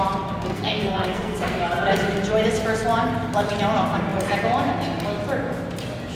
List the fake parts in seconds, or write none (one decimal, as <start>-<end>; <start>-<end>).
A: 0.5-1.6